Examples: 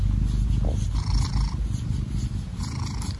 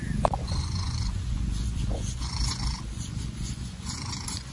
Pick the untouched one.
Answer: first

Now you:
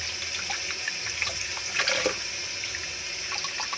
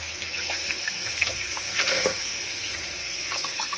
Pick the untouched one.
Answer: first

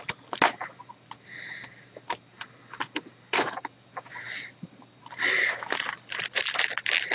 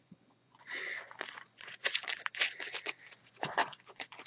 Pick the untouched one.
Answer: first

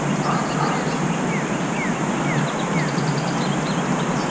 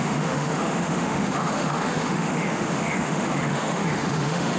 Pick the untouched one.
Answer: first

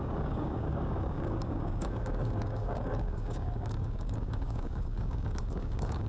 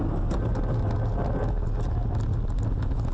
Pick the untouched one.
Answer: second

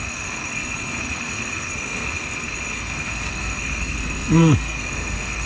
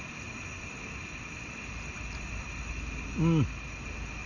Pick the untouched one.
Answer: second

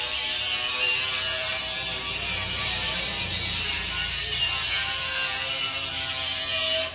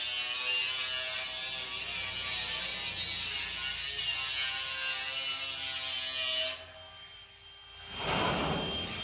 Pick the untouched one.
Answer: second